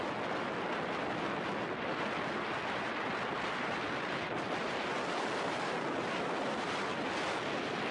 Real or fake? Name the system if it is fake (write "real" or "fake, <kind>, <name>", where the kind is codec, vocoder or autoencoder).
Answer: real